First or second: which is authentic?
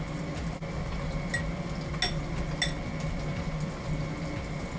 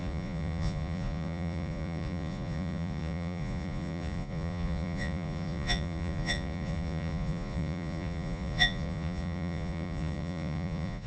first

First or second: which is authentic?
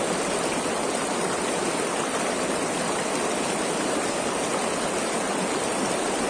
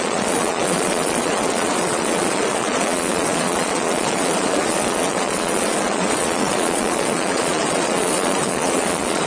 first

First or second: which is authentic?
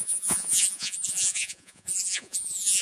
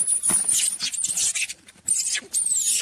second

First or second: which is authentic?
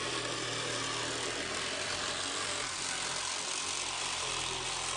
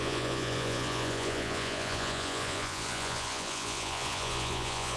first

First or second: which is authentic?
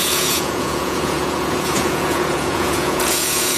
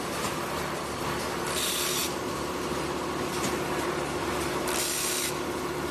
second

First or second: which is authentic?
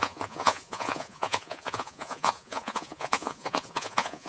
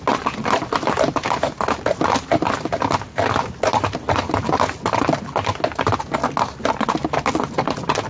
second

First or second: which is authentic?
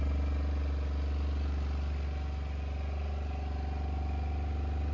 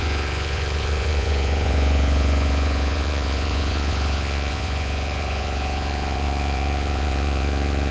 first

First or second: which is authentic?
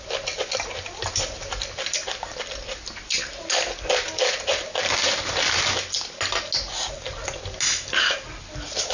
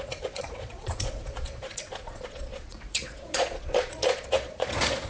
first